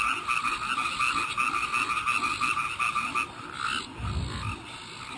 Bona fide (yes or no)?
yes